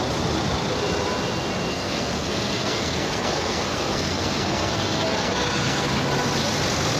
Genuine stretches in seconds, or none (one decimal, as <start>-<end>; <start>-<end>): 0.0-1.7; 5.9-7.0